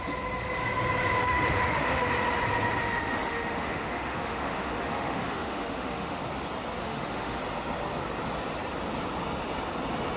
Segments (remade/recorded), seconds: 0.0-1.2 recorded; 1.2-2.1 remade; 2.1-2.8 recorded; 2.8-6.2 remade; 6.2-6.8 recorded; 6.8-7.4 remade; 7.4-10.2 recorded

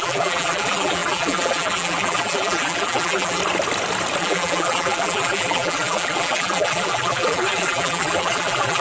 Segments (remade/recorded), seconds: 0.0-3.4 remade; 3.4-4.2 recorded; 4.2-8.8 remade

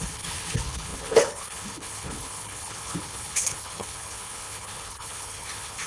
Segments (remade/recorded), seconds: 0.0-5.9 remade

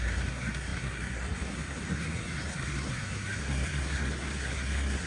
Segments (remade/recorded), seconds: 0.0-5.1 remade

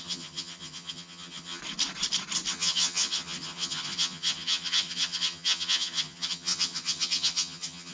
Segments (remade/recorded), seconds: 0.0-1.6 remade; 1.6-2.5 recorded; 2.5-7.9 remade

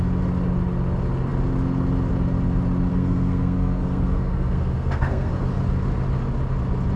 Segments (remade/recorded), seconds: 0.0-2.9 recorded; 2.9-5.3 remade; 5.3-7.0 recorded

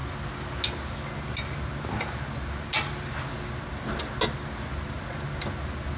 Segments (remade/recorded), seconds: 0.0-6.0 recorded

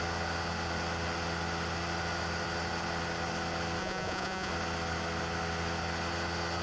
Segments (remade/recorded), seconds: 0.0-3.8 recorded; 3.8-4.5 remade; 4.5-6.6 recorded